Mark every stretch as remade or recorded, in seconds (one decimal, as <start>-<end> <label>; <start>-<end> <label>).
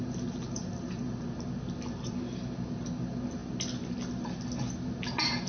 0.0-5.5 recorded